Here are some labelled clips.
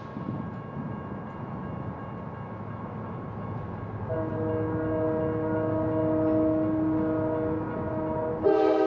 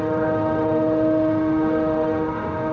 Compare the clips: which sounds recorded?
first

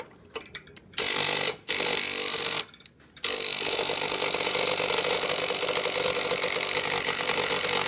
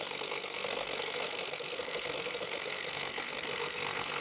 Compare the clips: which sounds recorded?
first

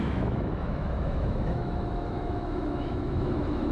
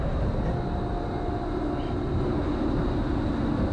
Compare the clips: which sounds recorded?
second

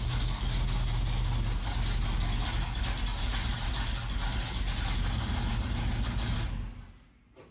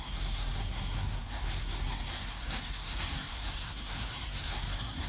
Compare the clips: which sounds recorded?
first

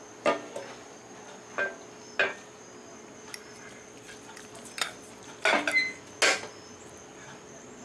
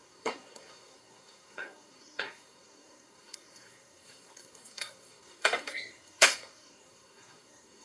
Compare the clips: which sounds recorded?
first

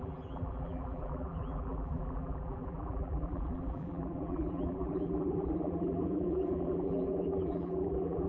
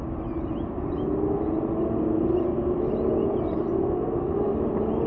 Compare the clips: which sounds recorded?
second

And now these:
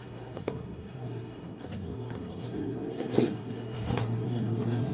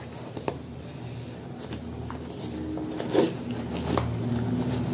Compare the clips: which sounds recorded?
second